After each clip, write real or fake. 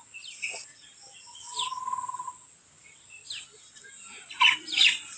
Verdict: real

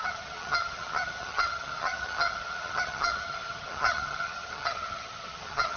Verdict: fake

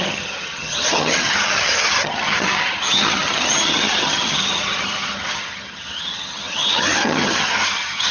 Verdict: fake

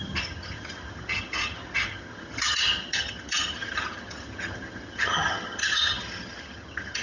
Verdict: fake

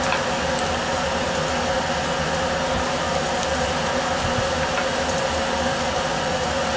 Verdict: real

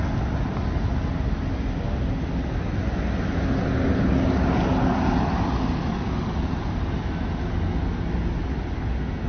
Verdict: real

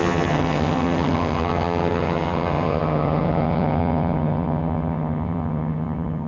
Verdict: fake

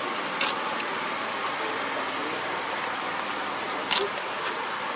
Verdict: real